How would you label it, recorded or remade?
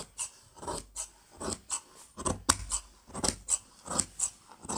recorded